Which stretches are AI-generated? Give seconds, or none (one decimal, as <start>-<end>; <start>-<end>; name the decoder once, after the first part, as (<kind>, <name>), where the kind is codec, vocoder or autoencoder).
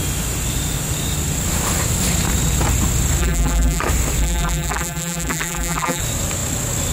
3.2-3.8 (vocoder, BigVGAN v2); 4.2-6.0